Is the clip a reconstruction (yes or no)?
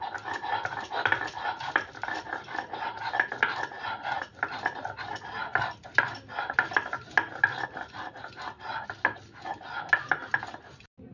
no